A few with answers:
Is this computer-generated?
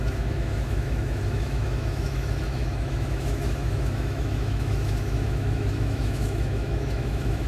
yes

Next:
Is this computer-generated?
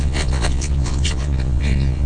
yes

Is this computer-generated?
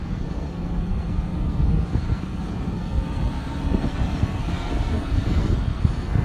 yes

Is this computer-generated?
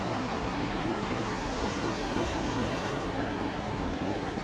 yes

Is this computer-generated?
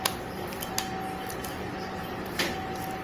no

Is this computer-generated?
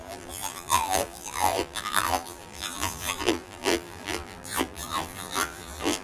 yes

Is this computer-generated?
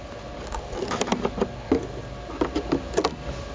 no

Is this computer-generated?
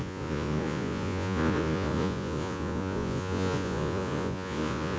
yes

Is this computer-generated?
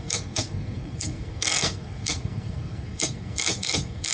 yes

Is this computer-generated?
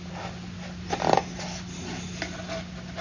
no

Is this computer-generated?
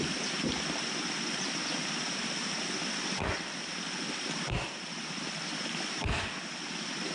no